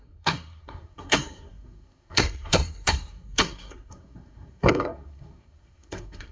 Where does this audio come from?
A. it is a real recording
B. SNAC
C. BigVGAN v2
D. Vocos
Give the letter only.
B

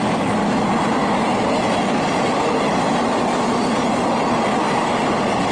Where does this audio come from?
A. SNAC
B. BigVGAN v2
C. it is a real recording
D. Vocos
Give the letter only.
C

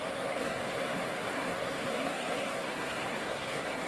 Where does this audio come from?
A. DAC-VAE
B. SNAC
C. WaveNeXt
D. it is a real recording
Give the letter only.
B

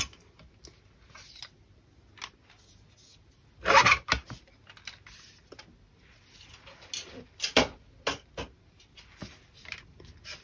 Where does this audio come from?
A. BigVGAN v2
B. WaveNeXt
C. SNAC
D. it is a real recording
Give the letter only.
D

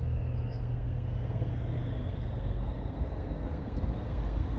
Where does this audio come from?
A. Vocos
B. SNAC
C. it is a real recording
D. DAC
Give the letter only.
B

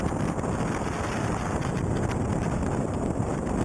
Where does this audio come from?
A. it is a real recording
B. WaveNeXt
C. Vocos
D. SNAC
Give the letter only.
A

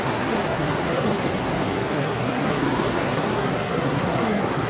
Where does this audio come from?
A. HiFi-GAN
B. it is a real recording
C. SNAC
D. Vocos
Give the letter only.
C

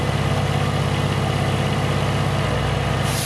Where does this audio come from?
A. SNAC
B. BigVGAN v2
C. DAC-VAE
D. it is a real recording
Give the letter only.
D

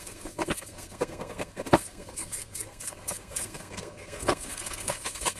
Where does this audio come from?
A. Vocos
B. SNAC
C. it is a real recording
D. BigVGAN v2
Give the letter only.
B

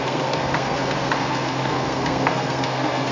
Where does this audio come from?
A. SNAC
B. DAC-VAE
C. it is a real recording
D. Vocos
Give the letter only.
A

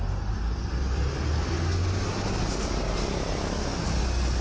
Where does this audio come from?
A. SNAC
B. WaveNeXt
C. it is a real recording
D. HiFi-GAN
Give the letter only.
C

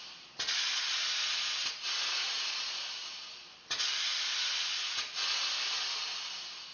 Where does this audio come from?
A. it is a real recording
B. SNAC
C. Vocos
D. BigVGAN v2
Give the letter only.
A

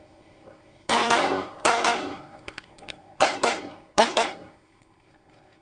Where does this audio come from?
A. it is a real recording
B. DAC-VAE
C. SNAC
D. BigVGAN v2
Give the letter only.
C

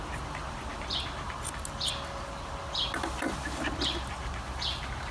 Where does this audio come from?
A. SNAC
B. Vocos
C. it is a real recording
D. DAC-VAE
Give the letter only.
C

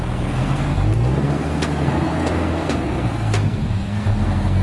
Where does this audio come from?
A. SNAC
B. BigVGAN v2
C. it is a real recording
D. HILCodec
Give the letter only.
A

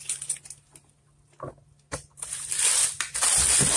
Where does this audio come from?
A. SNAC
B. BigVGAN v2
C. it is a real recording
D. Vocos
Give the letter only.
C